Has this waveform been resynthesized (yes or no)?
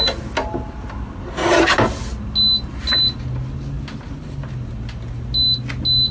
no